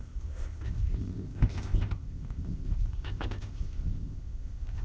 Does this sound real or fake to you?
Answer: fake